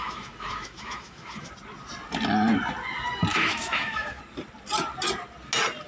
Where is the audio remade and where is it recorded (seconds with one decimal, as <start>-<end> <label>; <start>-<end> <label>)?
0.0-1.5 remade; 1.5-3.3 recorded; 3.3-4.2 remade; 4.2-5.9 recorded